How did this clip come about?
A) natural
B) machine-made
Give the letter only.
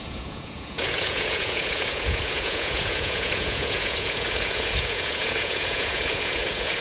B